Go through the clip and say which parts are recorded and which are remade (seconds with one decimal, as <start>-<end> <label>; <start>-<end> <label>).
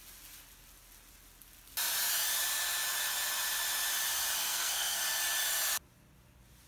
0.0-4.4 recorded; 4.4-5.0 remade; 5.0-6.7 recorded